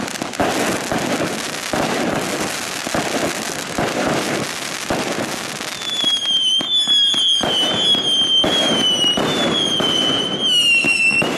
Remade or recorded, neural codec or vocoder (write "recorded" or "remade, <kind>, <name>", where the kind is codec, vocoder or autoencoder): recorded